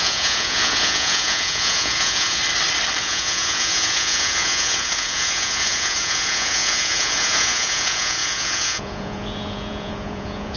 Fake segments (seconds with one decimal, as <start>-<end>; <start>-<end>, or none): 0.0-2.4; 3.0-10.6